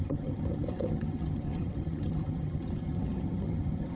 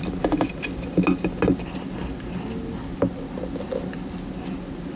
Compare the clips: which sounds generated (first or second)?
first